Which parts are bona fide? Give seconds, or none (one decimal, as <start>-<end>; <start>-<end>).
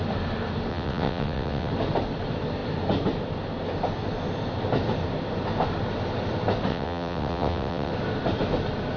0.0-0.7; 1.7-6.7; 7.9-9.0